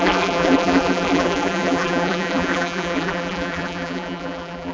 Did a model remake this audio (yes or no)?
yes